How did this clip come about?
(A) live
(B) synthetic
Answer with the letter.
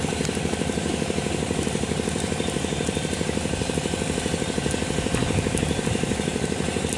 B